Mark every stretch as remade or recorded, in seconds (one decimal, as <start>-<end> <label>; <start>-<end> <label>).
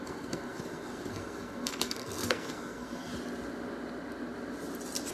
0.0-3.1 remade; 3.1-5.1 recorded